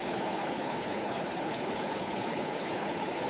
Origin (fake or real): fake